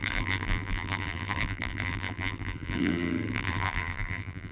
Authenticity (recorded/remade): remade